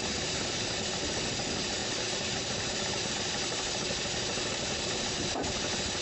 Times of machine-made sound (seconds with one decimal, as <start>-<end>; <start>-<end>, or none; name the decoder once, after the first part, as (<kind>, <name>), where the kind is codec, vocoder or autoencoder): 0.0-6.0 (vocoder, BigVGAN v2)